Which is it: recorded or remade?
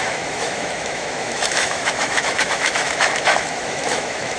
remade